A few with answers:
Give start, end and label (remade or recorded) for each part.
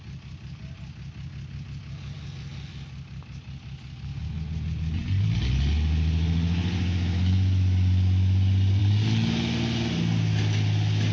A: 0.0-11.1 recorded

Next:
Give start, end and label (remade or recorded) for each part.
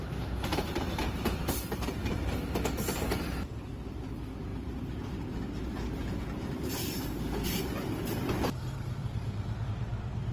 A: 0.0-0.5 recorded; 0.5-2.4 remade; 2.4-4.5 recorded; 4.5-7.0 remade; 7.0-9.0 recorded; 9.0-9.7 remade; 9.7-10.3 recorded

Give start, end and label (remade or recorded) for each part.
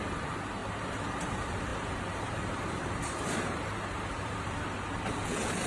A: 0.0-5.7 remade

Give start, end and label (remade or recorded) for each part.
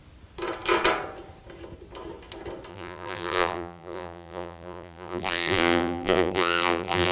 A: 0.0-2.7 recorded; 2.7-7.1 remade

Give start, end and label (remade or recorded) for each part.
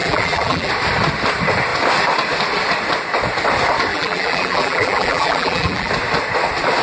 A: 0.0-0.7 remade; 0.7-3.9 recorded; 3.9-5.9 remade; 5.9-6.8 recorded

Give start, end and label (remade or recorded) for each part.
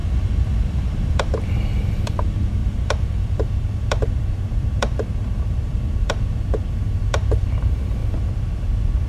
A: 0.0-8.0 remade; 8.0-9.1 recorded